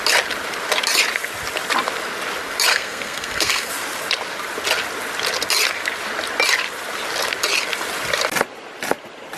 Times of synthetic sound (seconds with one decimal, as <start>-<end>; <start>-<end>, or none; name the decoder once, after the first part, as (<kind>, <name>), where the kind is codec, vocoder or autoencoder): 2.7-3.7 (codec, SNAC)